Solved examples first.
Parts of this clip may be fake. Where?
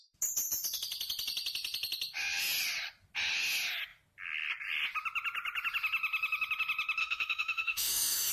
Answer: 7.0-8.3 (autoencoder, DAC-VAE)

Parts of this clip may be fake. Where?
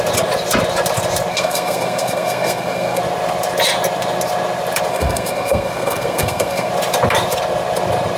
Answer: 1.3-3.0 (codec, SNAC); 4.9-6.7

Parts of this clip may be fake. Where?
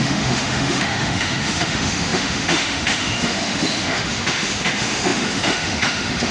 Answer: 0.0-6.3 (autoencoder, DAC-VAE)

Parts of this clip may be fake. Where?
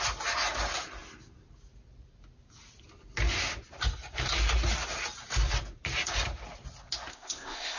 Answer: 7.1-7.8 (codec, ZipCodec)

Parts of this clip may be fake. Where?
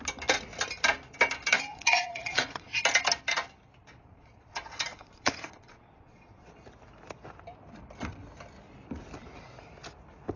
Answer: 1.7-2.8 (vocoder, Vocos); 3.8-6.5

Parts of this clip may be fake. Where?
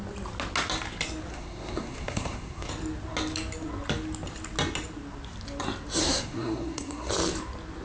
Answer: 1.3-2.7 (codec, SNAC); 6.0-7.1